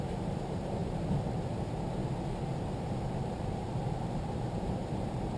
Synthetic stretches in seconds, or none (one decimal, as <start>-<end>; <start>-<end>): 0.0-2.0; 3.2-5.4